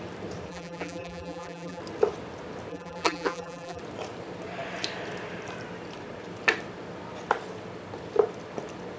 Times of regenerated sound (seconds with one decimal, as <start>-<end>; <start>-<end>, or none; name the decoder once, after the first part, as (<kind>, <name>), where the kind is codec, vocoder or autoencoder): 0.5-1.8 (vocoder, BigVGAN v2); 2.7-3.8

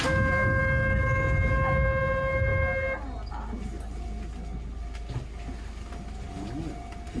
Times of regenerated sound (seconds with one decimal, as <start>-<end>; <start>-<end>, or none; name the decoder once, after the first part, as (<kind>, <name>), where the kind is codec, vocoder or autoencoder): none

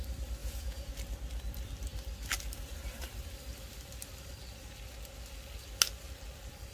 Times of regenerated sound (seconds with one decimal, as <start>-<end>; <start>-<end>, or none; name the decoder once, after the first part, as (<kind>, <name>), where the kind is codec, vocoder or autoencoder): 0.4-0.9 (vocoder, Vocos)